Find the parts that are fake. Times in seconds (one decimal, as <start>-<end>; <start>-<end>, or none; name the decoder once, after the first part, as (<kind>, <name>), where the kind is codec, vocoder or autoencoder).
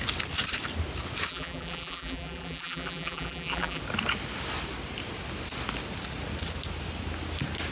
1.3-3.8 (vocoder, BigVGAN v2)